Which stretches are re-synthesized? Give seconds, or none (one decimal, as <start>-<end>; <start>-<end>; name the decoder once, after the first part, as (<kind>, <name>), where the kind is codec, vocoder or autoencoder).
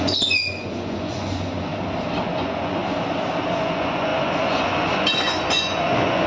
0.0-1.7 (vocoder, Vocos); 2.3-2.8; 3.5-6.3